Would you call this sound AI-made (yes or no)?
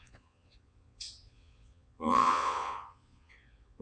yes